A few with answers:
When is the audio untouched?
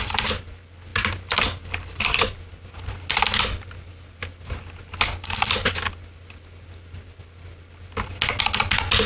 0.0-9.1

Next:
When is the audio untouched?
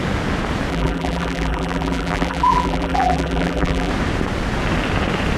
0.0-0.7; 3.9-5.4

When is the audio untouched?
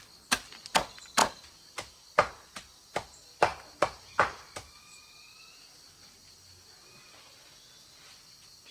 0.0-8.7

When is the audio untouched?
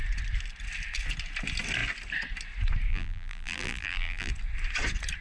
0.0-2.9; 4.3-5.2